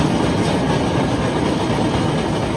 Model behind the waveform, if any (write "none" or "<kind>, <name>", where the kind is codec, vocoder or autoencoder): none